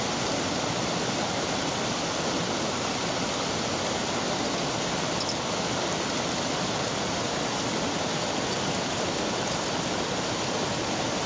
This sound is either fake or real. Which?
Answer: real